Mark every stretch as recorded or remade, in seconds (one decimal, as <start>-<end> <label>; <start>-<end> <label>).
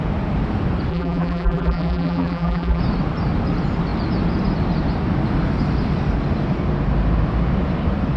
0.0-0.9 recorded; 0.9-2.8 remade; 2.8-8.2 recorded